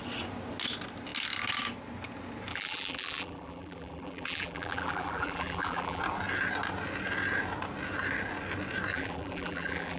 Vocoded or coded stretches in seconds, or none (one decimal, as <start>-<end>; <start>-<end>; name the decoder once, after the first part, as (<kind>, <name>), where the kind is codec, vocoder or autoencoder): 2.5-6.0 (vocoder, BigVGAN v2); 8.9-10.0